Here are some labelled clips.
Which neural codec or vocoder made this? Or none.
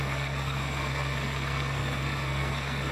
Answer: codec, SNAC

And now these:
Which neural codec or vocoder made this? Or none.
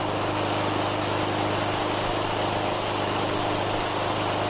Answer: none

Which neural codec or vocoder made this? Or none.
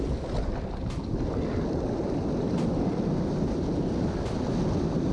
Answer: none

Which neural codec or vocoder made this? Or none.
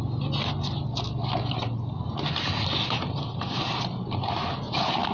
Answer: none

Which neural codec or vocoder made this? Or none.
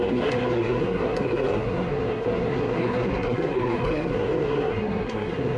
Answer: codec, SNAC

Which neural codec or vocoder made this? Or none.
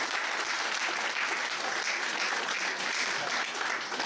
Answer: none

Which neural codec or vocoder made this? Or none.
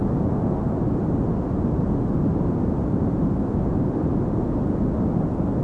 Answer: none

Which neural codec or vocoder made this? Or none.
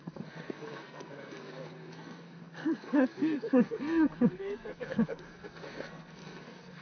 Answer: codec, SNAC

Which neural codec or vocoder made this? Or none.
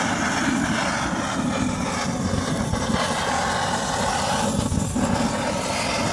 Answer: none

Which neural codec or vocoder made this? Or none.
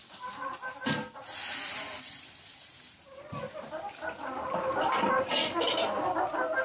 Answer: none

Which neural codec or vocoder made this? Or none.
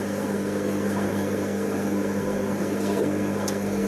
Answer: codec, SNAC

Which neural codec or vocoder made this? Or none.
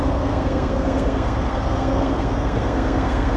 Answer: codec, SNAC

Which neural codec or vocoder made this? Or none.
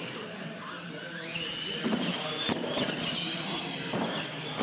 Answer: none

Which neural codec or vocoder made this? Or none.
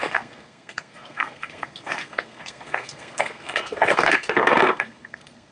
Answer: codec, SNAC